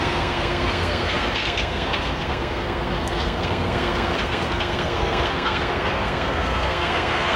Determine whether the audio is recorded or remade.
remade